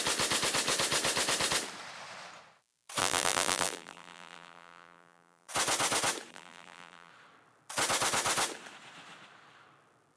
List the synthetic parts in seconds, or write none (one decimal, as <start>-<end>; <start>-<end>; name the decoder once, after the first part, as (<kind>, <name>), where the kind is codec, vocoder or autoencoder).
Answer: 3.0-5.5 (vocoder, BigVGAN v2); 6.3-7.1